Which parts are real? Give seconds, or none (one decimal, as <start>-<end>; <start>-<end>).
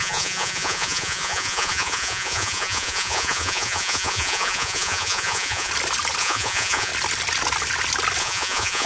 5.7-6.2; 6.9-8.2